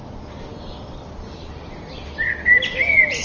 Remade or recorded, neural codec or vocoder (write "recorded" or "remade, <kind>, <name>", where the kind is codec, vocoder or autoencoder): recorded